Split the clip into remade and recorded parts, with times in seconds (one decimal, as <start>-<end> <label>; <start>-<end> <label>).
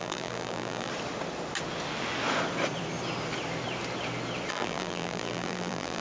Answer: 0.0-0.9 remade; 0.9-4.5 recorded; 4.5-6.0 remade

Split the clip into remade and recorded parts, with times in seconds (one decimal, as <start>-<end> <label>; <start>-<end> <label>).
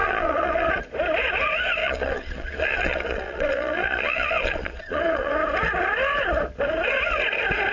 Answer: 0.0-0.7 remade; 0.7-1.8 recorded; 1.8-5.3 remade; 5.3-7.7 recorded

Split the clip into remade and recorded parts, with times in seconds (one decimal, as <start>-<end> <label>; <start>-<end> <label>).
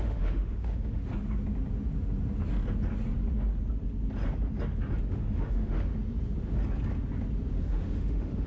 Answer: 0.0-1.0 remade; 1.0-5.1 recorded; 5.1-5.9 remade; 5.9-7.5 recorded; 7.5-8.5 remade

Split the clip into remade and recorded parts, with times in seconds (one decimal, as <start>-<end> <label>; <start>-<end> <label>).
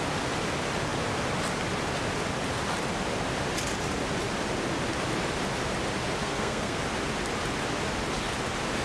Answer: 0.0-6.2 recorded; 6.2-6.8 remade; 6.8-8.8 recorded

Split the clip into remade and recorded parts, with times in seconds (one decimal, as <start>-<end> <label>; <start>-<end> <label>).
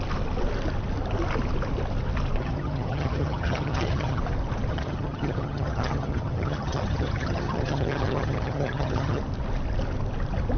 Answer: 0.0-2.4 recorded; 2.4-4.2 remade; 4.2-4.7 recorded; 4.7-9.2 remade; 9.2-10.6 recorded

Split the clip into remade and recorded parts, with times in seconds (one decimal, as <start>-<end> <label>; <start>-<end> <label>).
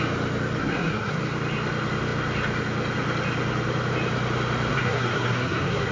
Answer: 0.0-0.6 recorded; 0.6-1.2 remade; 1.2-4.7 recorded; 4.7-5.9 remade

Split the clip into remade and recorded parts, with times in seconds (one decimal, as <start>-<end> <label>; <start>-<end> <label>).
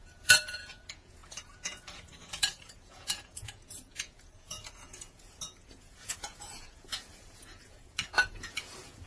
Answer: 0.0-9.1 remade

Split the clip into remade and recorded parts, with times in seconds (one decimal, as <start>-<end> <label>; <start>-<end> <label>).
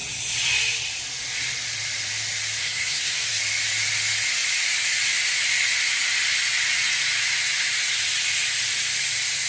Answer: 0.0-2.6 recorded; 2.6-3.4 remade; 3.4-9.5 recorded